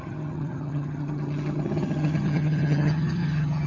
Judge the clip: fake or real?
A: fake